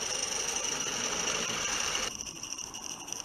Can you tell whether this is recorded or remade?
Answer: recorded